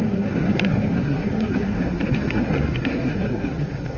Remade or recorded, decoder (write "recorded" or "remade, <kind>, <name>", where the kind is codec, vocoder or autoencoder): remade, codec, SNAC